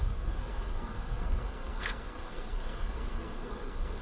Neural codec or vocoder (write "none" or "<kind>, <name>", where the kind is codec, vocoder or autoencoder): codec, SNAC